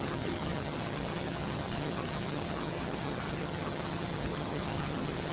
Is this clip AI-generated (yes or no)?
yes